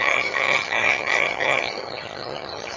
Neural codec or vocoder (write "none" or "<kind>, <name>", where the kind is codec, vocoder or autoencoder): vocoder, HiFi-GAN